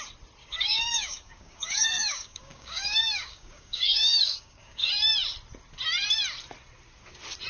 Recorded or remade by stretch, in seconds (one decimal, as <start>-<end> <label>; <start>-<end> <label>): 0.0-0.4 recorded; 0.4-4.9 remade; 4.9-7.5 recorded